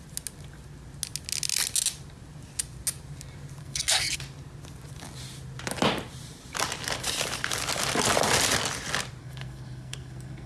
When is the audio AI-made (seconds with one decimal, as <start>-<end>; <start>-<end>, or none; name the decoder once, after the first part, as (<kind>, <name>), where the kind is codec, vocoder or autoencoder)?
3.6-4.2 (codec, SNAC); 9.2-10.5